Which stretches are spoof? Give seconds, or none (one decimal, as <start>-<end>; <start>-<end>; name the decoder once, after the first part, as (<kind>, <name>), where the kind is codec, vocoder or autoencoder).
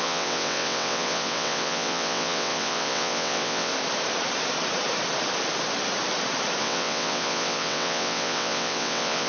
0.0-3.7 (vocoder, WaveNeXt); 6.6-9.3